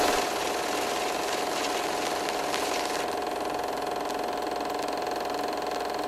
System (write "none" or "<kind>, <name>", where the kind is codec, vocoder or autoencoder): none